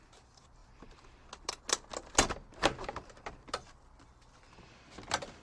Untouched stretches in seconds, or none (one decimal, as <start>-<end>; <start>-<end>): 0.0-5.4